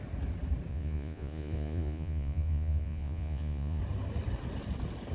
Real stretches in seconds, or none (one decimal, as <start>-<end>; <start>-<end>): 0.0-0.7; 3.8-5.1